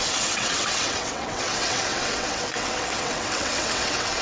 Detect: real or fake fake